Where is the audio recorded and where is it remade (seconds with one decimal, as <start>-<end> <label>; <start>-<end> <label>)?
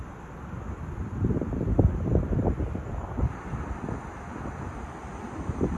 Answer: 0.0-5.8 recorded